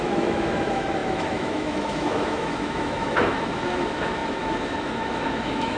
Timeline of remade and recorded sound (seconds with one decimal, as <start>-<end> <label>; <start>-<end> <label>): 0.0-5.8 remade